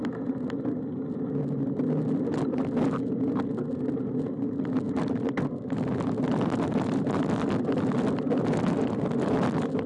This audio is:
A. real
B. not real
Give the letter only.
A